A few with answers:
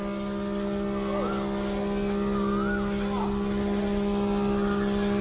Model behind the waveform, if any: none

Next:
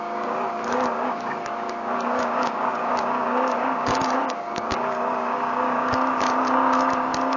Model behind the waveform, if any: codec, DAC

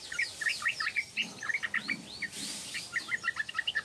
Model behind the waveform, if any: none